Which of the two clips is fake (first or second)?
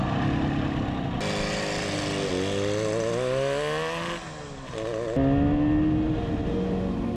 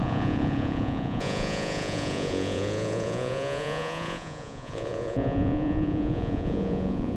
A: second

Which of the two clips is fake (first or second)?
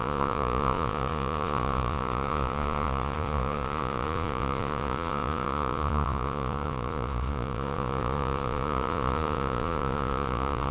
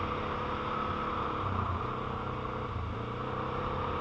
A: first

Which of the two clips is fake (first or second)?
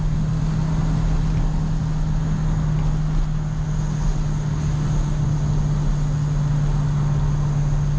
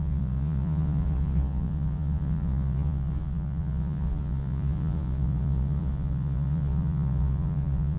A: second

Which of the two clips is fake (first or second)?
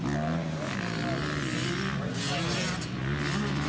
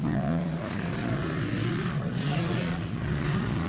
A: second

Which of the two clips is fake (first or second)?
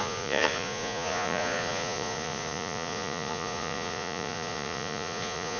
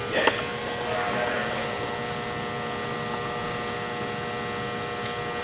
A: first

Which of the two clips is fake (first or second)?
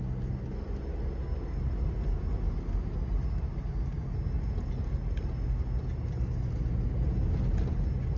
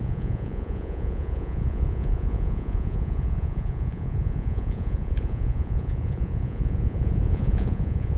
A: second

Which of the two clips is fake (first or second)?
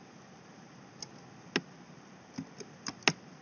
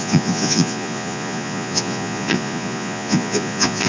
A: second